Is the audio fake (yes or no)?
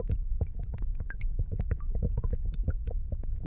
yes